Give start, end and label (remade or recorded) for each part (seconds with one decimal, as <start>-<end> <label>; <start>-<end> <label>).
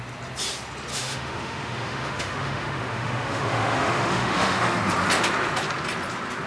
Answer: 0.0-0.9 recorded; 0.9-4.8 remade; 4.8-6.5 recorded